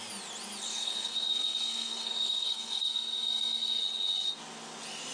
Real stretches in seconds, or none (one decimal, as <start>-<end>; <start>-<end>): 0.0-0.7; 3.8-5.1